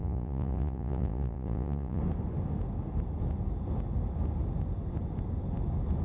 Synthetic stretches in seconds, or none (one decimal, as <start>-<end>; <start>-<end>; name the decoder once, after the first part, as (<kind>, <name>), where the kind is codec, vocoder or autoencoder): 0.0-2.0 (vocoder, Vocos)